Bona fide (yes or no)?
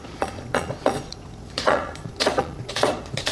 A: no